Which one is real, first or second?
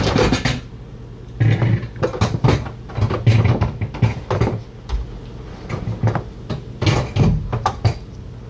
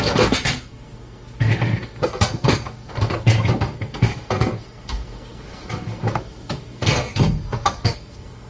first